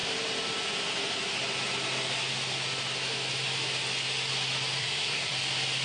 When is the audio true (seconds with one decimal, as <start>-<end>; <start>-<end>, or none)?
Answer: 0.0-4.8; 5.3-5.8

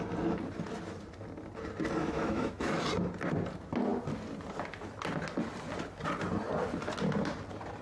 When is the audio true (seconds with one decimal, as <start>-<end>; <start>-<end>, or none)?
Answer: 0.0-2.0; 2.8-7.8

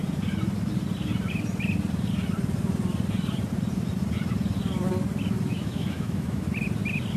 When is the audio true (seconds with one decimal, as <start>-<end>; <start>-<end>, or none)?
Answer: 0.0-5.5; 6.4-7.2

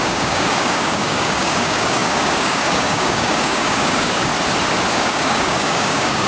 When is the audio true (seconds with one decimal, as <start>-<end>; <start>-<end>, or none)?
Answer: 4.3-4.9

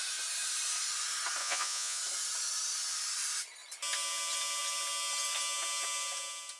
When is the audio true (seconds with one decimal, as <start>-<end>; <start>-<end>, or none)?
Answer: 0.0-1.4; 2.0-6.6